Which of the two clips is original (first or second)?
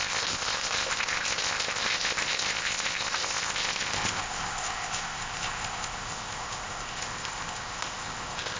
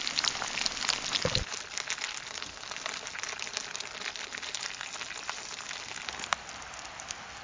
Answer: second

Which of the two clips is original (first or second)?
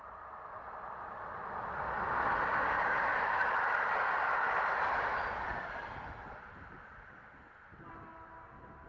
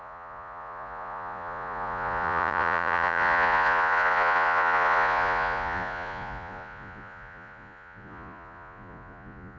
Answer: first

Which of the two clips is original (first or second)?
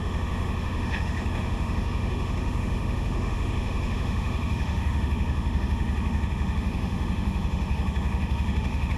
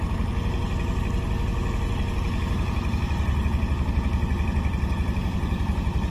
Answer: second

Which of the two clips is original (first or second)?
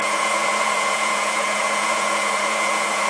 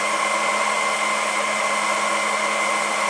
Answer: second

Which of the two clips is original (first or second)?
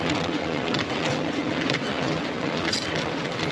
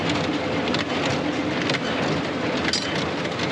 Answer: second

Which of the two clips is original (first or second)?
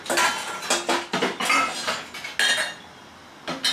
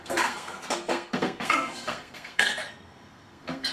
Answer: first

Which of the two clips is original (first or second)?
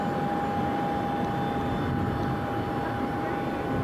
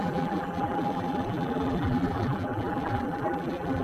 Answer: first